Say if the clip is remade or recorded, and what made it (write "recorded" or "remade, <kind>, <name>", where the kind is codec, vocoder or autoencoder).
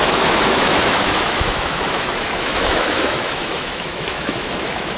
remade, autoencoder, DAC-VAE